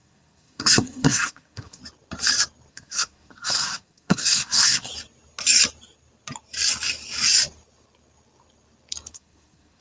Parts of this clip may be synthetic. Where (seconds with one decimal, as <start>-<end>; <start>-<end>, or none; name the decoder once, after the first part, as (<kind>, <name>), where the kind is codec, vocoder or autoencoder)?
0.0-1.8 (codec, SNAC); 2.7-4.9; 9.1-9.8